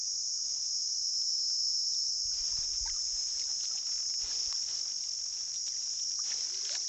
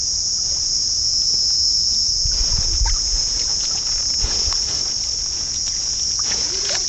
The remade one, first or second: second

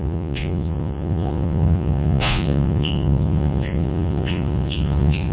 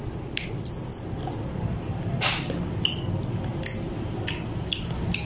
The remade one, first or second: first